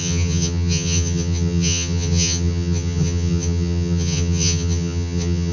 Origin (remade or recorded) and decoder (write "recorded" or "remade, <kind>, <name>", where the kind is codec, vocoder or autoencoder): remade, vocoder, HiFi-GAN